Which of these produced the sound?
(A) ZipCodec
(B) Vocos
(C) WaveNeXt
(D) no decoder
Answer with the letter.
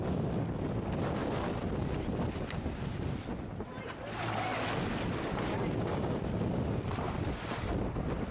D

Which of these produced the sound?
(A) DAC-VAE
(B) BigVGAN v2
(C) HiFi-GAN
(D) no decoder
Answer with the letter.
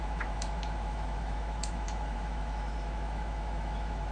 A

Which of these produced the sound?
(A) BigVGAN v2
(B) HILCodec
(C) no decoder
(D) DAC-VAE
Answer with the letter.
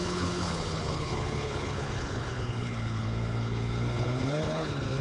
B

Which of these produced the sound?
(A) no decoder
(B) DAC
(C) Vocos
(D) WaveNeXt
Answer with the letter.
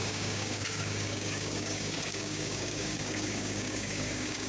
B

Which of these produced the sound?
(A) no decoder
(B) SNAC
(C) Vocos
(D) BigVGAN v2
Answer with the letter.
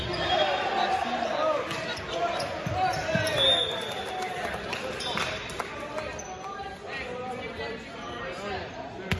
A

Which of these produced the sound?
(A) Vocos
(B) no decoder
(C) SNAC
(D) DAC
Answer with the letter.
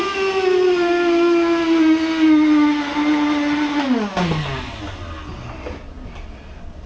B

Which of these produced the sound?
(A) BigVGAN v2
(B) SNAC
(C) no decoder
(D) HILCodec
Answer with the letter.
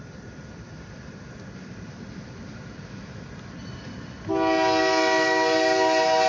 C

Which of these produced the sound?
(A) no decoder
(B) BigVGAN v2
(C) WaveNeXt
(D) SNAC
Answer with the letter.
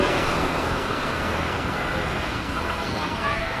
D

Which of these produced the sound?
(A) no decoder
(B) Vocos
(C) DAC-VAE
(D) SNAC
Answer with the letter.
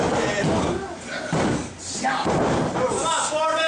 A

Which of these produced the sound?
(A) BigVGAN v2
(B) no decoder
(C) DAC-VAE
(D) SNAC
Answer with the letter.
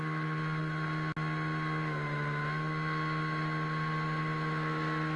B